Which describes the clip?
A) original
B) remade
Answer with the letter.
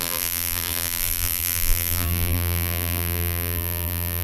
B